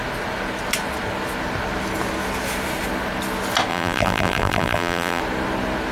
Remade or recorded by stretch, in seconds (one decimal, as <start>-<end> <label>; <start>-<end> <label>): 0.0-3.7 recorded; 3.7-5.2 remade; 5.2-5.9 recorded